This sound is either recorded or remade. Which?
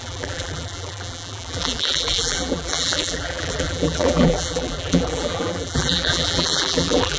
remade